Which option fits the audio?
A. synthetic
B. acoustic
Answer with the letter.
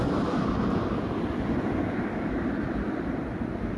B